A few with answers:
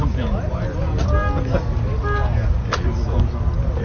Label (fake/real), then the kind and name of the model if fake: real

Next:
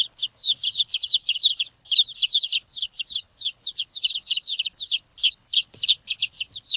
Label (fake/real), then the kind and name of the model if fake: fake, codec, HILCodec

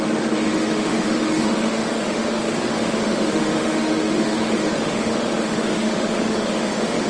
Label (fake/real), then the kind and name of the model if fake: fake, autoencoder, DAC-VAE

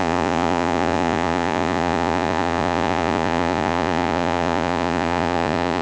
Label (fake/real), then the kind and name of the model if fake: fake, vocoder, Vocos